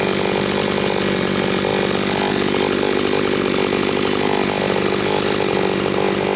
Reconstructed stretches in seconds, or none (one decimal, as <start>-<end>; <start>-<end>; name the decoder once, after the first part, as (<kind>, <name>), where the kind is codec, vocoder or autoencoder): none